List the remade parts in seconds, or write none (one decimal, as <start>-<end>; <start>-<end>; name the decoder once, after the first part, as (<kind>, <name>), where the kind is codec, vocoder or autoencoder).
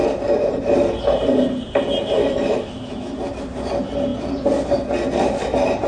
2.2-3.1 (autoencoder, DAC-VAE)